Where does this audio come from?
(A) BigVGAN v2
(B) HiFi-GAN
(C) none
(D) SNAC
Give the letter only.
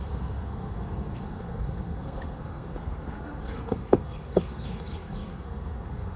D